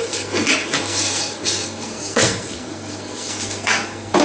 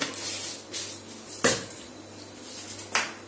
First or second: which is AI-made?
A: first